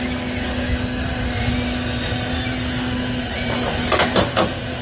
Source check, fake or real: real